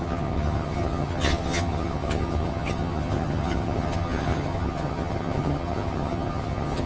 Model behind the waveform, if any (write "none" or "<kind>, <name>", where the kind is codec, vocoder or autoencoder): vocoder, HiFi-GAN